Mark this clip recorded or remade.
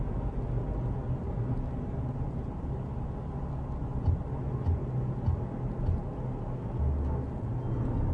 recorded